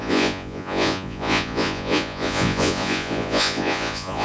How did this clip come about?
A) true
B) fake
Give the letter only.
B